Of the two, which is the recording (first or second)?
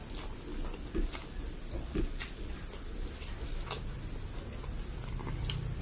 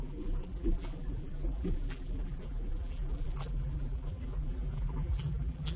first